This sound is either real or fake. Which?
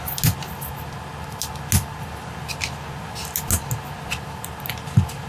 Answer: real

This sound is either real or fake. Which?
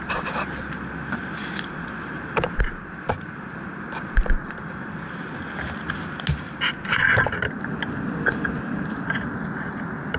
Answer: real